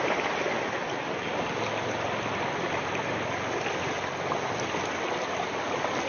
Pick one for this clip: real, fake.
real